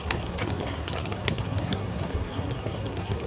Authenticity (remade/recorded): remade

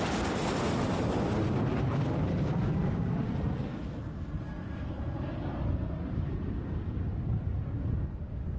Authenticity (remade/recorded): recorded